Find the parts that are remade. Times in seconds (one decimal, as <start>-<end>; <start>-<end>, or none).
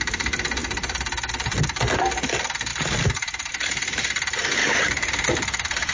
none